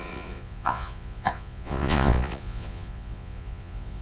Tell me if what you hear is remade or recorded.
remade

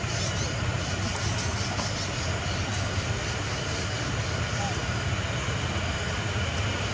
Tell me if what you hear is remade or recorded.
recorded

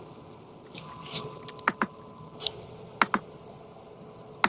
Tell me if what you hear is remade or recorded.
recorded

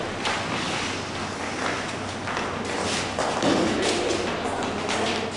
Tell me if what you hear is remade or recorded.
recorded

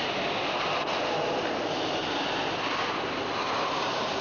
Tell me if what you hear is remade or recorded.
recorded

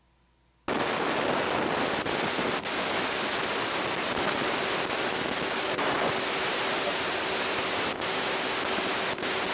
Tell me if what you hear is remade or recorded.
recorded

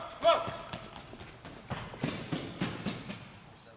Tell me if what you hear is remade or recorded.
recorded